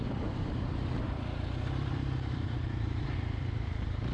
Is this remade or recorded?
remade